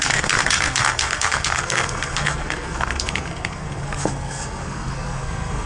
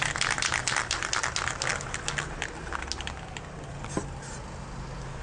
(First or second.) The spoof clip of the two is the first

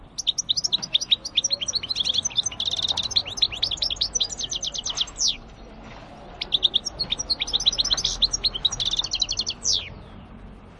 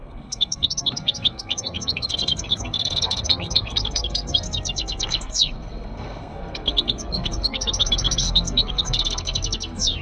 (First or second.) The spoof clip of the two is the second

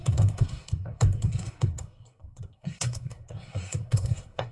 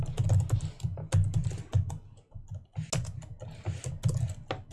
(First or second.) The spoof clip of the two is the first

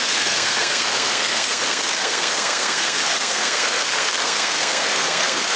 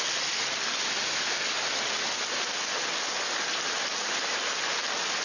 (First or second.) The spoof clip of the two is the first